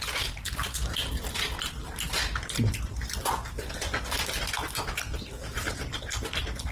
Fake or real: fake